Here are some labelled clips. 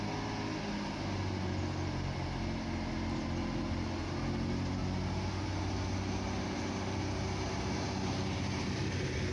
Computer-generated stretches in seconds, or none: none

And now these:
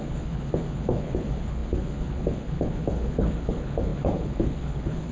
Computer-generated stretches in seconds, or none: 0.0-5.1

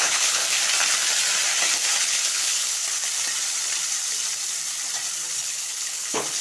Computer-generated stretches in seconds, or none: 0.0-0.4; 2.0-2.8; 5.4-6.4